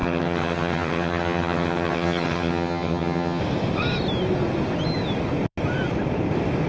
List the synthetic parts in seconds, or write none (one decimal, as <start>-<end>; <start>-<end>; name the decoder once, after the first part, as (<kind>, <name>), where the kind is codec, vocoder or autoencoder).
0.0-3.4 (vocoder, HiFi-GAN)